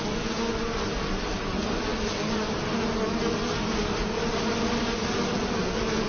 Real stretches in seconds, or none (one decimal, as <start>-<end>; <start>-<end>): 0.0-6.1